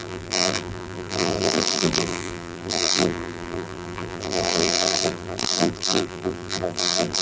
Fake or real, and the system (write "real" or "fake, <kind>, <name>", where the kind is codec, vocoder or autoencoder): fake, vocoder, BigVGAN v2